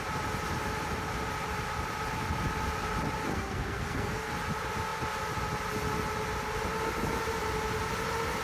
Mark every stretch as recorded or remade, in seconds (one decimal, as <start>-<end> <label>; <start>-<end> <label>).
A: 0.0-3.3 recorded; 3.3-4.3 remade; 4.3-8.4 recorded